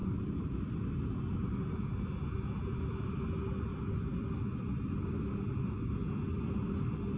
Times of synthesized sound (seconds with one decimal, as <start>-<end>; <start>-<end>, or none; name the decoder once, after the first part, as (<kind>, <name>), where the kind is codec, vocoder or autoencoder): 0.0-0.8 (vocoder, BigVGAN v2); 3.7-4.3